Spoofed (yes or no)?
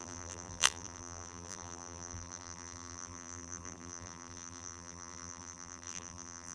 yes